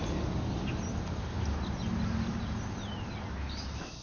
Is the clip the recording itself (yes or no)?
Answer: yes